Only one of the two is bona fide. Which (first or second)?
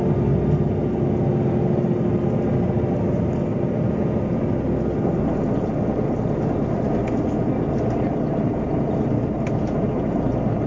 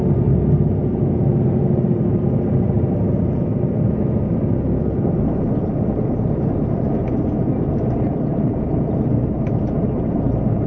first